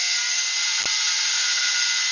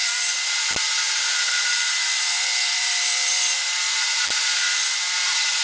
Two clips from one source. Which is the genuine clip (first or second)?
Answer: first